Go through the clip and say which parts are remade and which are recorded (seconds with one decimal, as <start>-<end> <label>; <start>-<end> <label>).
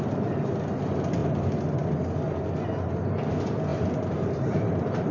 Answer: 0.0-3.7 recorded; 3.7-5.1 remade